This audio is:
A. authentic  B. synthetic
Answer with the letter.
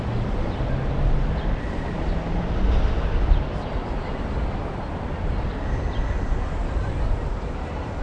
A